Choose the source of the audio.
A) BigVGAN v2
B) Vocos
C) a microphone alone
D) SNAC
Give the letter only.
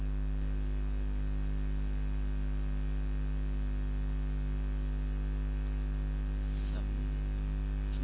C